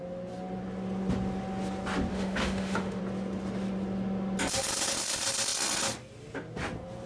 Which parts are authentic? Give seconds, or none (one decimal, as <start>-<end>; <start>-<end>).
0.0-2.1; 3.0-7.1